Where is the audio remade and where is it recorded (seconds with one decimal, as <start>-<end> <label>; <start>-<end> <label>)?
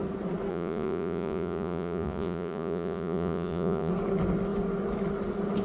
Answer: 0.0-0.5 recorded; 0.5-3.9 remade; 3.9-5.6 recorded